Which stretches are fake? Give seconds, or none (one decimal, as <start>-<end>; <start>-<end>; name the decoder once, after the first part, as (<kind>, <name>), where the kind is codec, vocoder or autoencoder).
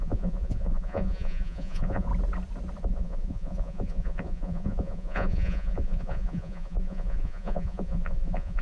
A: 0.0-2.1 (vocoder, Vocos); 2.8-8.6